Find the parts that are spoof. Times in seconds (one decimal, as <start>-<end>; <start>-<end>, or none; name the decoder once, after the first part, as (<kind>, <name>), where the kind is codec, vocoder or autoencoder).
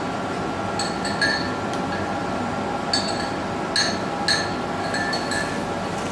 none